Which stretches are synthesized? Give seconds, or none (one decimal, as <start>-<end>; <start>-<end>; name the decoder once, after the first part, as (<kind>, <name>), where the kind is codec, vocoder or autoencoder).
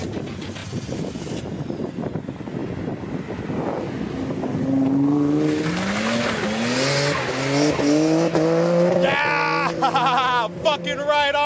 0.6-1.2 (vocoder, BigVGAN v2); 2.6-3.5